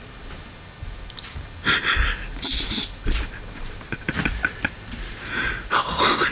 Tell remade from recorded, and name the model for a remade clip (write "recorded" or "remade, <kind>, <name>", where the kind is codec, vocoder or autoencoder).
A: recorded